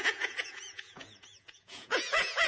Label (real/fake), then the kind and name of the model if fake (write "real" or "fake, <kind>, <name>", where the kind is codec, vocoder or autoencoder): fake, vocoder, Vocos